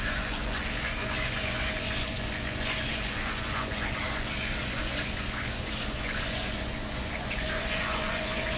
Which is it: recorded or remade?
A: remade